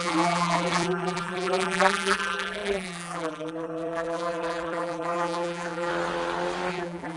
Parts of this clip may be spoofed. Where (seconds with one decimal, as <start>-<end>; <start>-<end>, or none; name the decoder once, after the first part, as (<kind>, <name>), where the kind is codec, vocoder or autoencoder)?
0.0-5.9 (vocoder, BigVGAN v2); 6.7-7.2